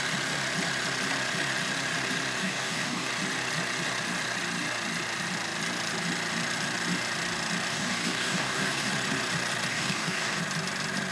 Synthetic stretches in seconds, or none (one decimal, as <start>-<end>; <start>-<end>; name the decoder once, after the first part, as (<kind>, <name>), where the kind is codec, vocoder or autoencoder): 2.4-3.1 (codec, DAC); 7.7-8.9; 9.7-10.4